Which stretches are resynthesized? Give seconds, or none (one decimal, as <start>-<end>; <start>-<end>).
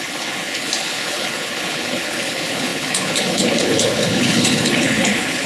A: 0.0-5.5